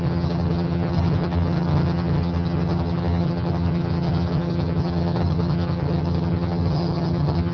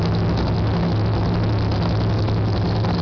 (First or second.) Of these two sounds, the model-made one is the first